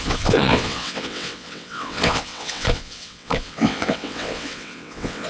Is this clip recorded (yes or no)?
no